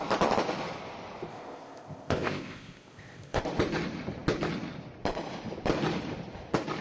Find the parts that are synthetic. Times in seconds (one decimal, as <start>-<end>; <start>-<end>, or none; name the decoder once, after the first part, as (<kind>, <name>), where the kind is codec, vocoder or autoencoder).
1.3-3.4 (codec, ZipCodec)